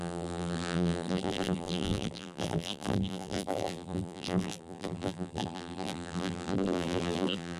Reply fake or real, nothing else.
fake